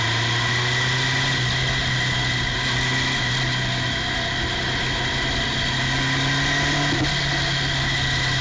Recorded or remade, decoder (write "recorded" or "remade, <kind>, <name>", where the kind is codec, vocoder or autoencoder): recorded